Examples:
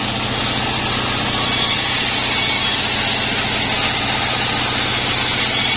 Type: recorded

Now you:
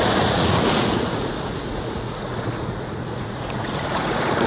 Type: remade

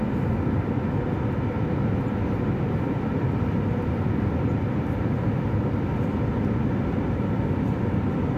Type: recorded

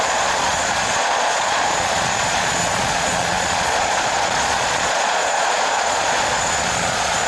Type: remade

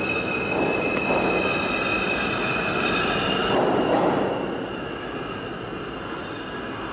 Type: recorded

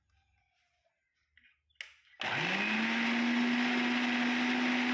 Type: recorded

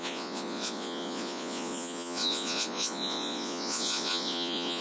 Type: remade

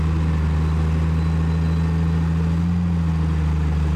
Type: recorded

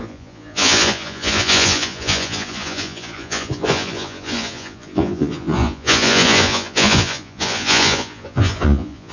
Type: remade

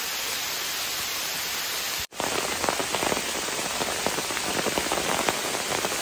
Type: recorded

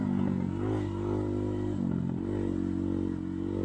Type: recorded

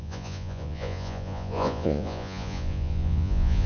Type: remade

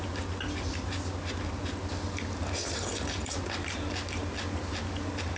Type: recorded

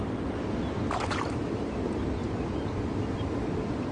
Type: recorded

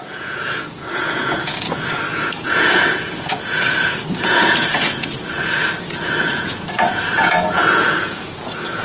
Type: remade